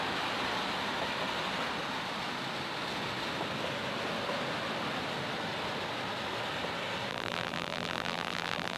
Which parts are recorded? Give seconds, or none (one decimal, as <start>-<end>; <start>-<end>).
0.0-7.1